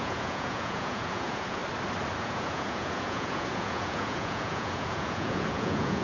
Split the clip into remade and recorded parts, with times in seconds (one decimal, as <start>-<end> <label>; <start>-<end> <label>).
0.0-1.6 remade; 1.6-2.2 recorded; 2.2-6.0 remade